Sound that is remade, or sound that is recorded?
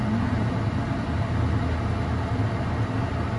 recorded